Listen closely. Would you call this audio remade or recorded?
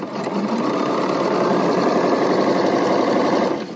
recorded